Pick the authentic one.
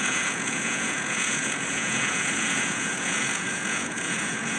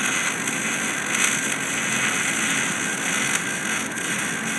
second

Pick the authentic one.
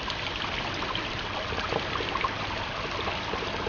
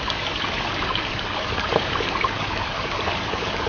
first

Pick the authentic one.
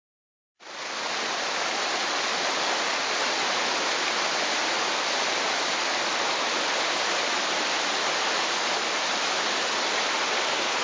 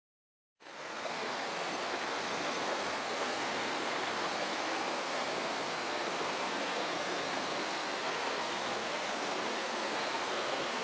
first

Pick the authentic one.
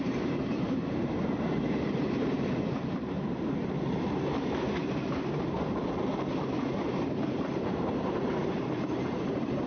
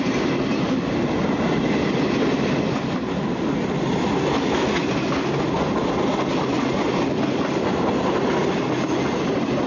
second